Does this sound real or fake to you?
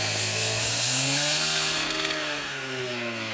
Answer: fake